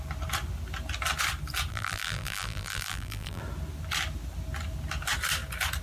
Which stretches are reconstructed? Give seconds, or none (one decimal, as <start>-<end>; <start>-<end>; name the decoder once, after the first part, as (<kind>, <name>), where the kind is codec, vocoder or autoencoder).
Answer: 1.7-3.4 (vocoder, BigVGAN v2)